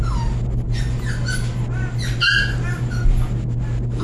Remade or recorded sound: recorded